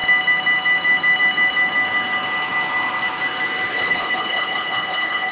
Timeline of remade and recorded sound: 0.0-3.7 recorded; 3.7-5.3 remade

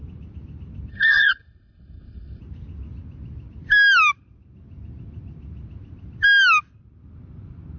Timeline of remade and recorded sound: 0.0-0.9 recorded; 0.9-2.4 remade; 2.4-7.8 recorded